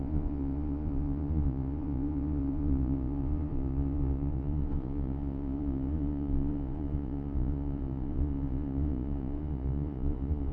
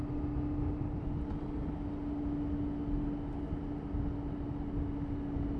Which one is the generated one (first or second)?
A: first